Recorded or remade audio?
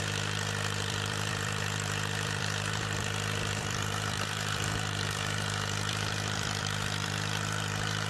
remade